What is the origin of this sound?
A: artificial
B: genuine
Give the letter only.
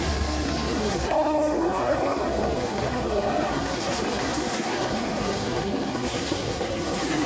A